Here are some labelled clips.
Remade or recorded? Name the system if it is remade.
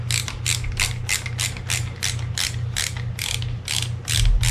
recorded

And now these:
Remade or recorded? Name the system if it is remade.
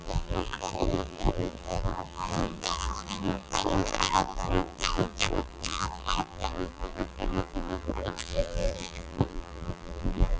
remade, vocoder, BigVGAN v2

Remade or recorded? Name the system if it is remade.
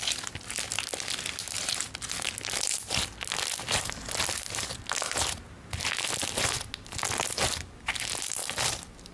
recorded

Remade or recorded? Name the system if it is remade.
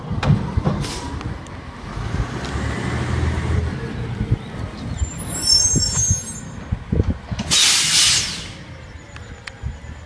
recorded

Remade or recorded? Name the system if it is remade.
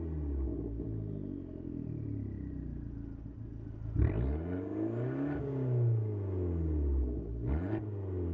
recorded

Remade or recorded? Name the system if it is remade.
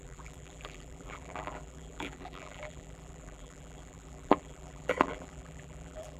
remade, vocoder, BigVGAN v2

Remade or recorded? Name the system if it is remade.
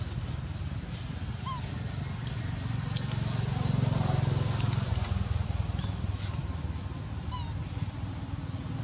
recorded